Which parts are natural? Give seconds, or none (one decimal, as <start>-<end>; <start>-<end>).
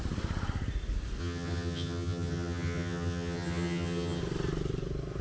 0.0-1.2; 4.2-5.2